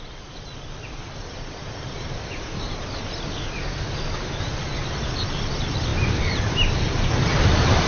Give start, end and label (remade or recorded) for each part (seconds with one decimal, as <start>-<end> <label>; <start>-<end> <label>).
0.0-7.9 recorded